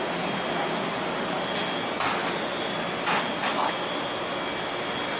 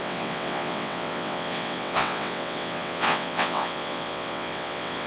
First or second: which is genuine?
first